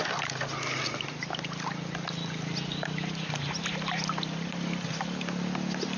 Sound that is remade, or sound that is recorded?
recorded